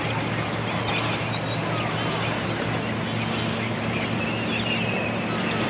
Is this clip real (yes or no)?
yes